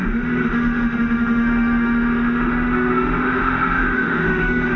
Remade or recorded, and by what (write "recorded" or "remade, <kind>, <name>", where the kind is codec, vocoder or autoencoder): remade, autoencoder, DAC-VAE